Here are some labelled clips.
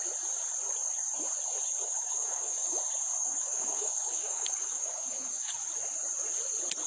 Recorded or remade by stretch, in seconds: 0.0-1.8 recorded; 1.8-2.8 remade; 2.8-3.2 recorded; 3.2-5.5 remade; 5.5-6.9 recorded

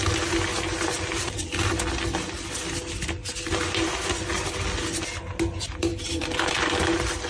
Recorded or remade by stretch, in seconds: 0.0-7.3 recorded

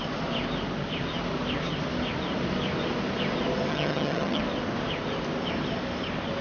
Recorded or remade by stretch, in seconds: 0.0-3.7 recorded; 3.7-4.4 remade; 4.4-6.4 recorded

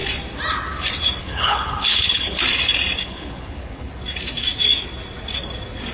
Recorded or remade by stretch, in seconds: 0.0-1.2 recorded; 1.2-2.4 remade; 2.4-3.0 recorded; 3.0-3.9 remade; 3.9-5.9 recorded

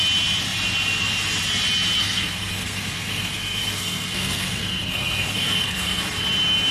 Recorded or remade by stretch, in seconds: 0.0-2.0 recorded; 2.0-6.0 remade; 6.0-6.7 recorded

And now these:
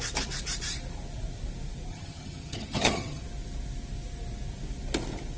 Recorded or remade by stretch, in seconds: 0.0-1.9 recorded; 1.9-3.2 remade; 3.2-5.4 recorded

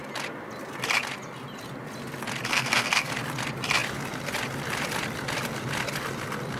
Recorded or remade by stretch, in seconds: 0.0-2.5 recorded; 2.5-3.1 remade; 3.1-6.6 recorded